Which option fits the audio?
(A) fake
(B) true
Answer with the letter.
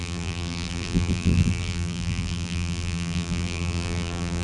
A